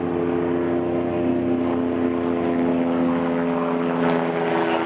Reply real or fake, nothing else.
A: real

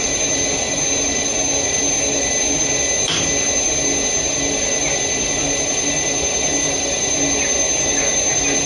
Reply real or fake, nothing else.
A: real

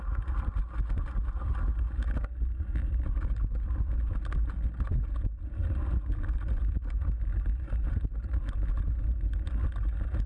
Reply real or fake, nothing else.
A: real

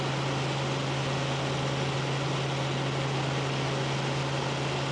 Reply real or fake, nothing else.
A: real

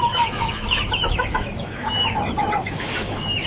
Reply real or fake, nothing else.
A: fake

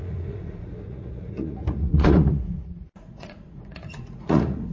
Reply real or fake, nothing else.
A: fake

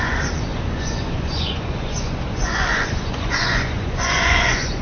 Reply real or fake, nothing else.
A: fake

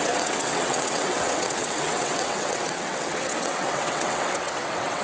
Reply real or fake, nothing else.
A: fake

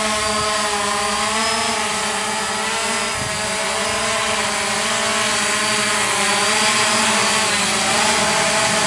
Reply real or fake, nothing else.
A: real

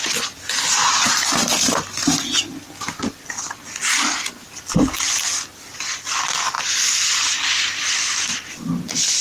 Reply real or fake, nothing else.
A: real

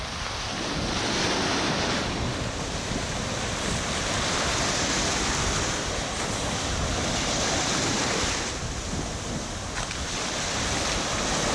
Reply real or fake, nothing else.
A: real